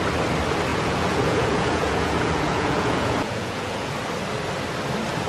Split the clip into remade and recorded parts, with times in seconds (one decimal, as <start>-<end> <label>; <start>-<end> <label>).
0.0-0.7 recorded; 0.7-3.9 remade; 3.9-5.3 recorded